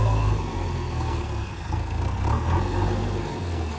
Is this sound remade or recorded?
remade